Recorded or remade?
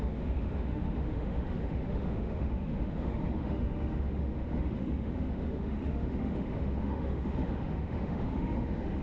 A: remade